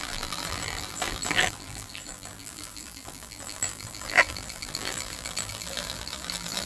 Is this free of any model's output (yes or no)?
no